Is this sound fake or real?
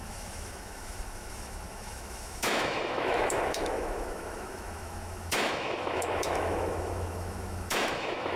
fake